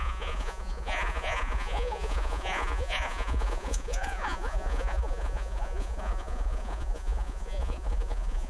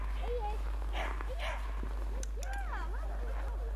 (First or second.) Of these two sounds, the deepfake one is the first